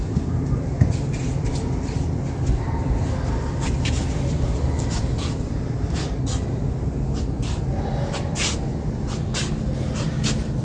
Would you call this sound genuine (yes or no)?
yes